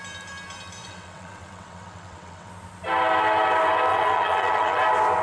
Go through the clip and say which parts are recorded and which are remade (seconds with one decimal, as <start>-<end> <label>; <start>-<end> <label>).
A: 0.0-0.8 recorded; 0.8-2.5 remade; 2.5-3.9 recorded; 3.9-4.8 remade; 4.8-5.2 recorded